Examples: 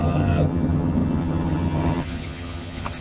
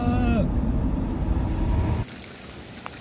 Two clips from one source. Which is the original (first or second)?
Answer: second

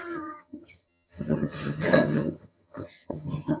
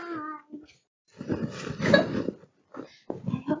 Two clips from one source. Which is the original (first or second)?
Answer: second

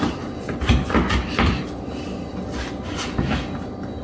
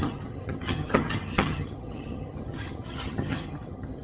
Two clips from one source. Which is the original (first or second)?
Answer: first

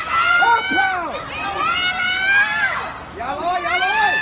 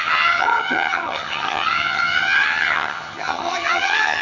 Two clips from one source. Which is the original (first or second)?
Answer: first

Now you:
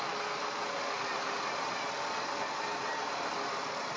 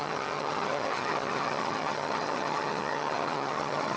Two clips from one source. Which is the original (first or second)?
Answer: first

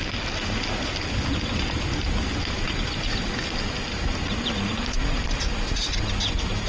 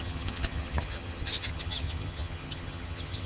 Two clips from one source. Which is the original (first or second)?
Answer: first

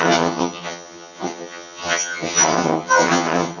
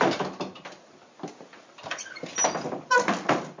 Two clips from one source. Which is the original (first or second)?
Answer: second